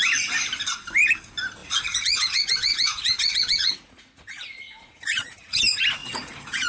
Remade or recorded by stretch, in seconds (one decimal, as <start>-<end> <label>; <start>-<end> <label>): 0.0-1.6 recorded; 1.6-5.6 remade; 5.6-6.0 recorded; 6.0-6.7 remade